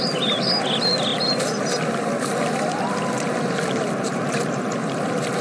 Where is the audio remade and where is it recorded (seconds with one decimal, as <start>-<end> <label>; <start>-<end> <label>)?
0.0-5.4 recorded